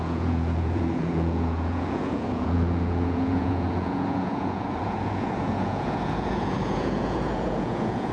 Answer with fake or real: fake